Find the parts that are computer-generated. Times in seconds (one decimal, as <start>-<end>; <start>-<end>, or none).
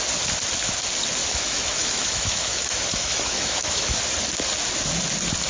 1.2-4.0